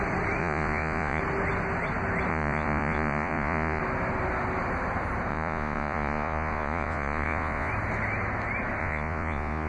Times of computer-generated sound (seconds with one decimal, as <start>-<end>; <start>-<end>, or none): 0.4-1.2; 2.3-3.8; 5.3-7.7; 8.8-9.7

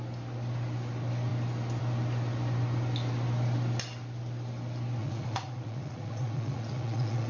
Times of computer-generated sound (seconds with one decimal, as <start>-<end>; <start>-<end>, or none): 5.0-7.3

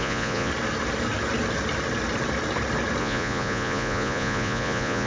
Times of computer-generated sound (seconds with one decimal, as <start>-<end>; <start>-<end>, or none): 0.0-0.5; 3.0-5.1

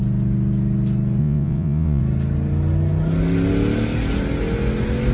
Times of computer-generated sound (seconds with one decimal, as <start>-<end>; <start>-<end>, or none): 1.2-2.0